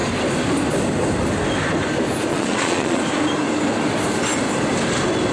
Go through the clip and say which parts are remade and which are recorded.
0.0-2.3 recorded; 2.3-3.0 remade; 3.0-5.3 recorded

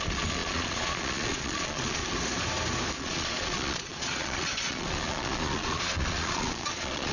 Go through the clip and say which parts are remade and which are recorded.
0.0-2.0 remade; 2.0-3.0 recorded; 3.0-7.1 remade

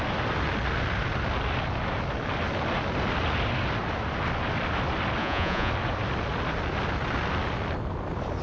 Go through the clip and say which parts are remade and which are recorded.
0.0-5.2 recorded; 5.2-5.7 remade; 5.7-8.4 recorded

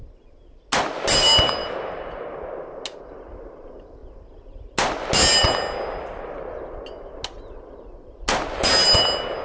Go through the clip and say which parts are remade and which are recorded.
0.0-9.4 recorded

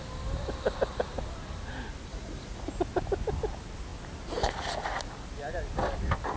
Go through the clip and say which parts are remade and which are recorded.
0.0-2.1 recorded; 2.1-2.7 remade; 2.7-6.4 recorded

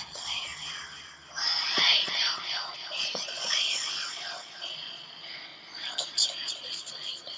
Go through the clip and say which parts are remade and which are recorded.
0.0-0.5 remade; 0.5-1.6 recorded; 1.6-5.5 remade; 5.5-6.5 recorded; 6.5-7.4 remade